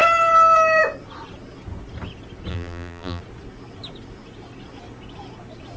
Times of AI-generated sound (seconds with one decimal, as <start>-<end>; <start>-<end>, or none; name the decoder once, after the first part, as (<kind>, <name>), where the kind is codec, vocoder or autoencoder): 2.5-3.2 (vocoder, BigVGAN v2)